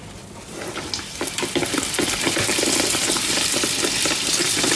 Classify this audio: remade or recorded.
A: remade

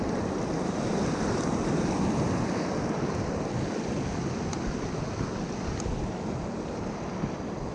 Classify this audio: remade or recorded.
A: recorded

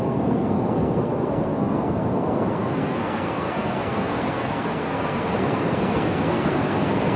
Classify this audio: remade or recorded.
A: remade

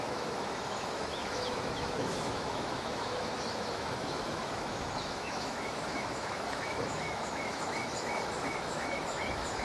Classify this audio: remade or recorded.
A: remade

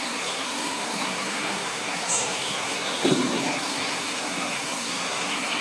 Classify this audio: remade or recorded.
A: remade